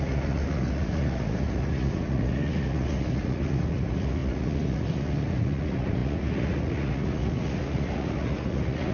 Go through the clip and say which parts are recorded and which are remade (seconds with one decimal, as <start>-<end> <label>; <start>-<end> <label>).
0.0-8.9 remade

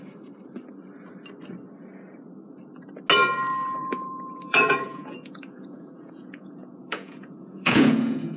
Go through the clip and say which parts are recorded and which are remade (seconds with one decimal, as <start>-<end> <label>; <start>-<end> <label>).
0.0-3.8 recorded; 3.8-8.4 remade

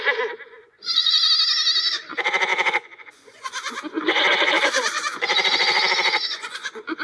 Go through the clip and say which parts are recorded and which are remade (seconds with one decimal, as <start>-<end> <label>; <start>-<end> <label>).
0.0-1.2 remade; 1.2-1.9 recorded; 1.9-7.0 remade

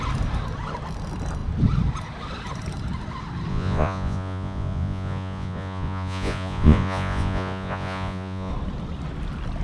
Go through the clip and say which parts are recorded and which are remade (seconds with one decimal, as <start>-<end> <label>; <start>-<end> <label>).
0.0-3.5 recorded; 3.5-8.5 remade; 8.5-9.6 recorded

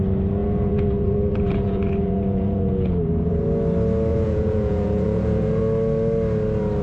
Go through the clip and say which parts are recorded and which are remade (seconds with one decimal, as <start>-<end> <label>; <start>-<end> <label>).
0.0-0.4 recorded; 0.4-3.3 remade; 3.3-4.1 recorded; 4.1-5.6 remade; 5.6-6.8 recorded

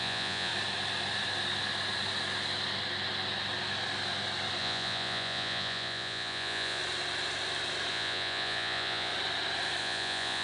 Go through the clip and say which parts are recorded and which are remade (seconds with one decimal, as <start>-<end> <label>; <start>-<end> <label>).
0.0-0.5 remade; 0.5-4.6 recorded; 4.6-6.8 remade; 6.8-7.9 recorded; 7.9-9.1 remade; 9.1-9.8 recorded; 9.8-10.4 remade